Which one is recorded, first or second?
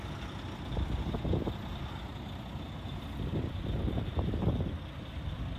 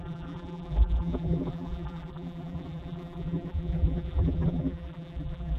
first